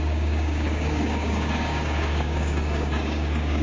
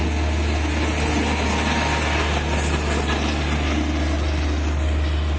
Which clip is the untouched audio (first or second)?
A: second